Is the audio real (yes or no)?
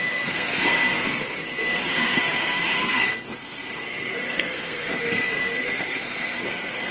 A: no